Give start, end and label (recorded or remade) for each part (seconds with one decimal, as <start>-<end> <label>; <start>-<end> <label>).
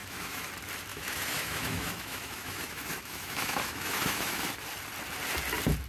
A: 0.0-0.5 remade; 0.5-0.9 recorded; 0.9-4.4 remade; 4.4-5.9 recorded